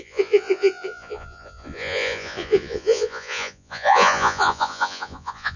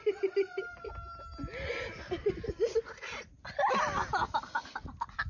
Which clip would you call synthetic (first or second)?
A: first